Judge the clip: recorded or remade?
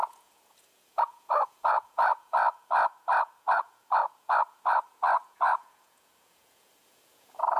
remade